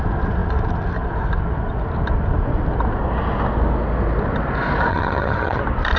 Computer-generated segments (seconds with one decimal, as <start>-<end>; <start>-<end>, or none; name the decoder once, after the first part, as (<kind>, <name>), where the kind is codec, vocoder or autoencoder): 4.9-5.6 (vocoder, HiFi-GAN)